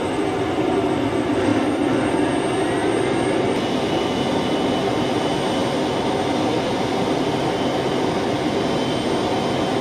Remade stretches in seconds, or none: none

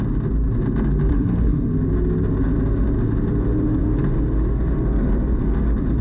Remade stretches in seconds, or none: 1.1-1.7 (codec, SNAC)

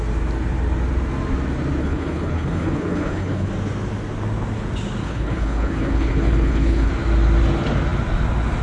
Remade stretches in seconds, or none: 1.8-3.5 (codec, HILCodec); 5.0-6.9

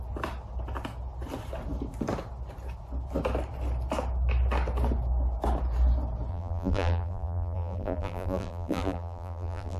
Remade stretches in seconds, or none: 6.3-9.8 (vocoder, BigVGAN v2)

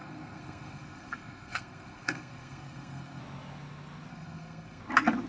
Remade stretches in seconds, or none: 0.0-3.2 (codec, SNAC); 4.1-4.8

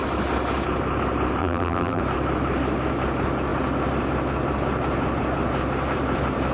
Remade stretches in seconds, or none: 1.4-2.0 (vocoder, BigVGAN v2)

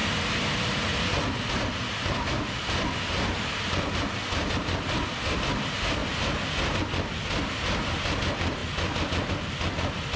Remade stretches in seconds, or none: 0.0-1.2 (vocoder, BigVGAN v2)

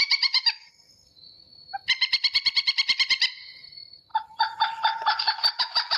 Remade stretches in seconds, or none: none